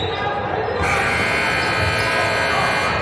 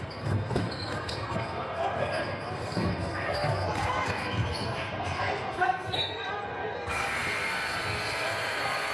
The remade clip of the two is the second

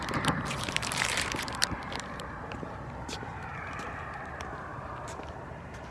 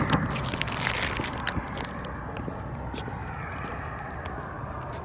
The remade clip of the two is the first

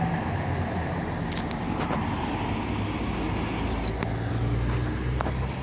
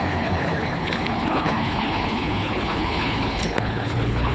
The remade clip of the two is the second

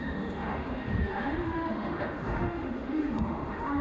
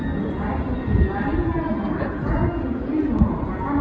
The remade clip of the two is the first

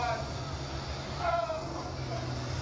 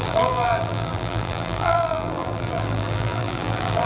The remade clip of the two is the second